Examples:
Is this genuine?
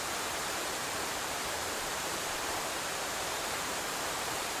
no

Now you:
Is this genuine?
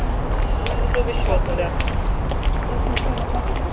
yes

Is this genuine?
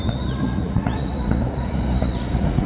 no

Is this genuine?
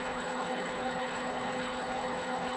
no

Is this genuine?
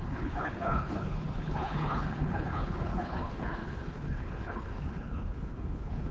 no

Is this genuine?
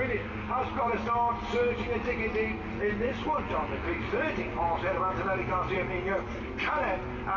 yes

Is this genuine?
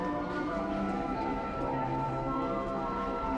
no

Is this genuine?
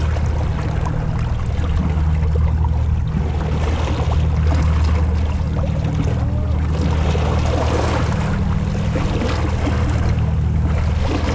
yes